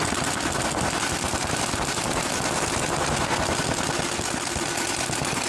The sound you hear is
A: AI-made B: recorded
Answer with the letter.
B